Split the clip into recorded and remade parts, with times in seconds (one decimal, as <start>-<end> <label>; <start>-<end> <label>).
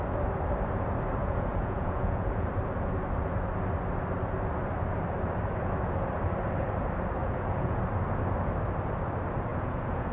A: 0.0-1.2 recorded; 1.2-2.5 remade; 2.5-7.2 recorded; 7.2-7.8 remade; 7.8-9.5 recorded; 9.5-10.1 remade